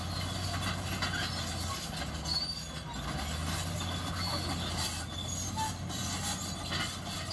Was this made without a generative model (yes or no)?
yes